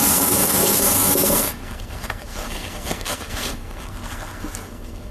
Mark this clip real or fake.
fake